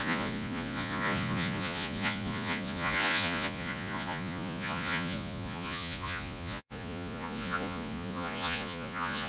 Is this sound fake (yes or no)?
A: yes